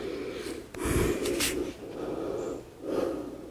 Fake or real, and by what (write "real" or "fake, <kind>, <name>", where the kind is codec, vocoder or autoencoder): real